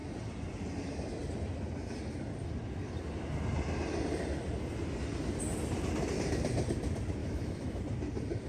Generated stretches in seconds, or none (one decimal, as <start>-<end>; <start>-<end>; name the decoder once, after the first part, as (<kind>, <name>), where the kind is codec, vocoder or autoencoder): 7.2-7.8 (autoencoder, DAC-VAE)